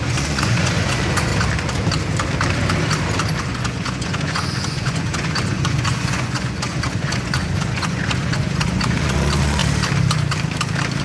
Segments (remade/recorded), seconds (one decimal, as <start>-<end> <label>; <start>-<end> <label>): 0.0-1.3 remade; 1.3-3.4 recorded; 3.4-9.6 remade; 9.6-11.0 recorded